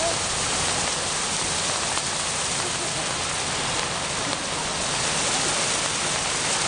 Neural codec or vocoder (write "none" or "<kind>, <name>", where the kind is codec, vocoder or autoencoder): none